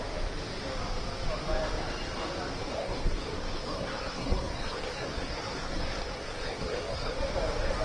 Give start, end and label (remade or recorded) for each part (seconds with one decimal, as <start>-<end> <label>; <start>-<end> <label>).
0.0-2.7 recorded; 2.7-7.2 remade; 7.2-7.8 recorded